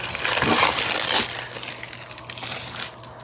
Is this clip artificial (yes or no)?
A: no